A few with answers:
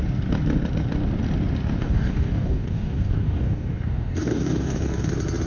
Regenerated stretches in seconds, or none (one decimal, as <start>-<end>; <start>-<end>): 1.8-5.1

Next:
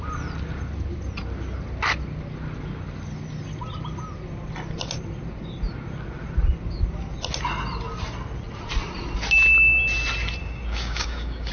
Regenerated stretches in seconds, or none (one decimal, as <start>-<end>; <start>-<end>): 10.4-11.5

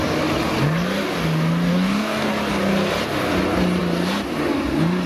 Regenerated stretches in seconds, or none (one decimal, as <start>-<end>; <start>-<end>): 1.7-2.3

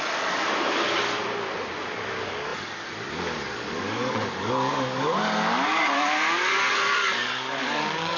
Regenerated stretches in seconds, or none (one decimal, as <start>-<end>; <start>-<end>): 0.0-1.2; 1.8-8.2

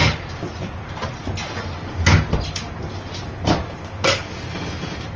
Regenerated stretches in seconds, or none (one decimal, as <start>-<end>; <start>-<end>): none

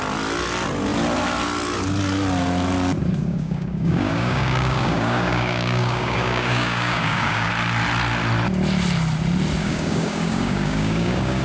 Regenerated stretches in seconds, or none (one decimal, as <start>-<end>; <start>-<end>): 3.2-7.5; 9.6-11.4

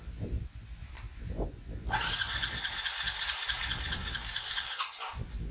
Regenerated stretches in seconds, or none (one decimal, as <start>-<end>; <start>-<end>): 4.0-4.9